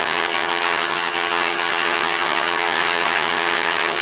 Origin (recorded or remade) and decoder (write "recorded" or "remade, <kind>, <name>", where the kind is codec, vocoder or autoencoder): remade, vocoder, HiFi-GAN